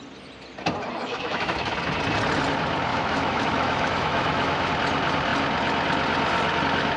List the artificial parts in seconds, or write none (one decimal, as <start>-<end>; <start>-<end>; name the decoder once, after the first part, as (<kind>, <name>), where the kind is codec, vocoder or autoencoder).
1.0-1.7 (autoencoder, DAC-VAE); 2.9-4.7